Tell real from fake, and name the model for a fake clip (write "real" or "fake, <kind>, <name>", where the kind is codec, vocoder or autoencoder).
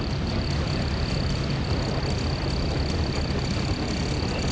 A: real